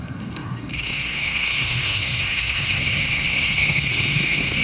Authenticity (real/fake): fake